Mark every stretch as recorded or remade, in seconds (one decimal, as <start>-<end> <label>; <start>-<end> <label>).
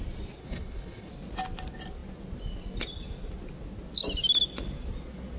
0.0-0.4 recorded; 0.4-1.1 remade; 1.1-5.4 recorded